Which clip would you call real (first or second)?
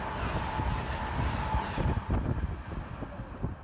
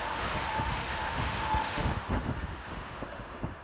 first